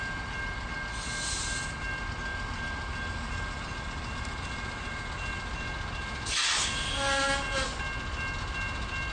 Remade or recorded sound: recorded